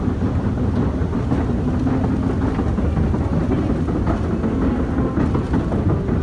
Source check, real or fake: real